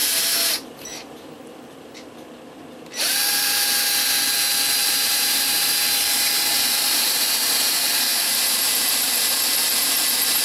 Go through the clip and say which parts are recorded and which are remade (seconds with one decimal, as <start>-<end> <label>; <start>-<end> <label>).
0.0-2.1 remade; 2.1-4.8 recorded; 4.8-10.0 remade; 10.0-10.4 recorded